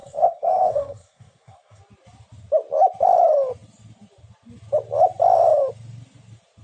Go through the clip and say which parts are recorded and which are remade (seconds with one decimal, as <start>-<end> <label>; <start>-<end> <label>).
0.0-1.8 remade; 1.8-6.6 recorded